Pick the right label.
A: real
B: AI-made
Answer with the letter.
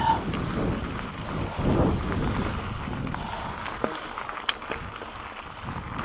A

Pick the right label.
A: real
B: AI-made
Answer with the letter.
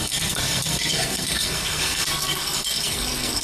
B